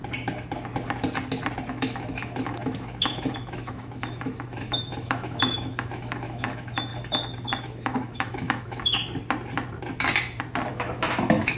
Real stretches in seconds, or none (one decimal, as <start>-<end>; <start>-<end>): 0.0-1.7; 6.9-7.6; 9.0-10.7